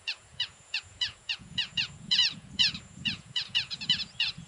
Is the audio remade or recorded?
remade